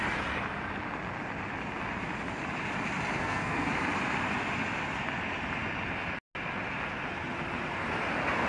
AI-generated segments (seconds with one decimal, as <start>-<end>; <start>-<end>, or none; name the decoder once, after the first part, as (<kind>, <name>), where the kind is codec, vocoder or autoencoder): 3.2-3.7 (codec, SNAC)